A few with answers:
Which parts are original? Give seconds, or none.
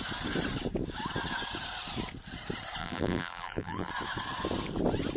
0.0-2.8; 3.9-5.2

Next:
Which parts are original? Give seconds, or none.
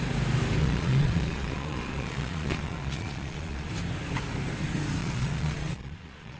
0.0-0.6; 3.7-5.0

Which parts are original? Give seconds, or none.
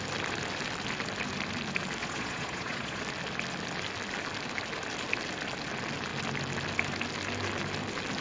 0.0-2.0; 3.0-8.2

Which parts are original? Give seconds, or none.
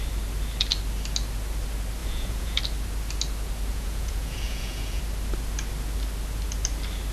0.0-2.0; 2.6-3.7; 5.0-7.1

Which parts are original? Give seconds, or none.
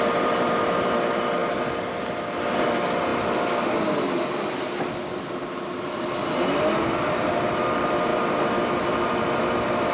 0.0-9.9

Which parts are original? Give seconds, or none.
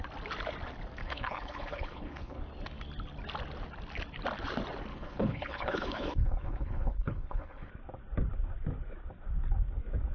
0.0-1.0; 2.4-4.9; 7.7-10.1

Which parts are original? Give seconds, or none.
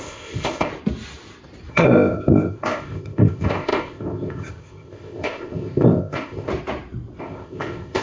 0.7-1.7; 6.5-7.2